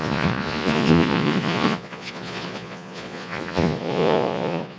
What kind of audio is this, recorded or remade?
remade